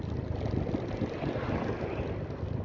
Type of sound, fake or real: real